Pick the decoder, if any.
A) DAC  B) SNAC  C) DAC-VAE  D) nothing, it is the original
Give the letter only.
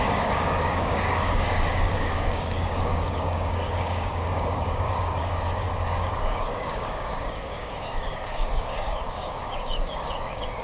A